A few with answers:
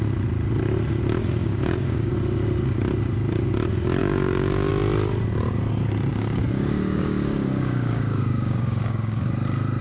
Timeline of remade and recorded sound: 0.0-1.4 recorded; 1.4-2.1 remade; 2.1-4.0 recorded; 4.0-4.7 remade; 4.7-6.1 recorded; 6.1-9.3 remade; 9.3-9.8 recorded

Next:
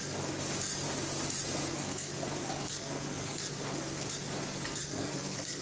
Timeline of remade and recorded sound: 0.0-1.7 recorded; 1.7-2.1 remade; 2.1-2.6 recorded; 2.6-3.4 remade; 3.4-4.4 recorded; 4.4-5.6 remade

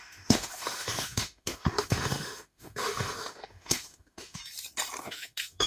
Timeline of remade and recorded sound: 0.0-4.4 remade; 4.4-5.0 recorded; 5.0-5.7 remade

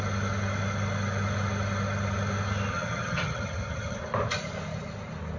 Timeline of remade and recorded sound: 0.0-2.7 recorded; 2.7-4.0 remade; 4.0-5.4 recorded

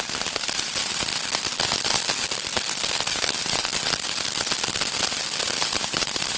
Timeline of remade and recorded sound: 0.0-1.1 remade; 1.1-3.1 recorded; 3.1-3.7 remade; 3.7-5.6 recorded; 5.6-6.4 remade

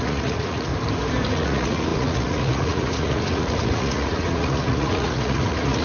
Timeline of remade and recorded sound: 0.0-0.7 remade; 0.7-1.3 recorded; 1.3-5.8 remade

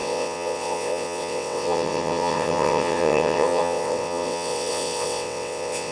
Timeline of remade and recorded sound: 0.0-5.9 remade

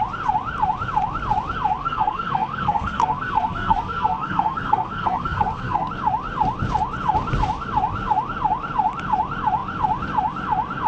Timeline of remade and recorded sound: 0.0-1.8 recorded; 1.8-5.9 remade; 5.9-10.9 recorded